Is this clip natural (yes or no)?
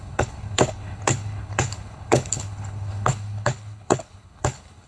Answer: no